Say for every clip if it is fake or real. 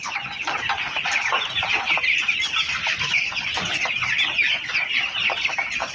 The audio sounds real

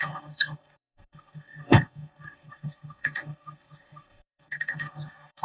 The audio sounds fake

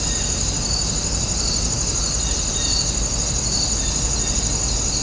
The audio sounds real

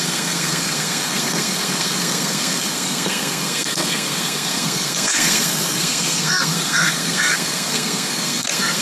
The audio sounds fake